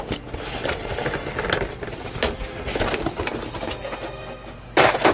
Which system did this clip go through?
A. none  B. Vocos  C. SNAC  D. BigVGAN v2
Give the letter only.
A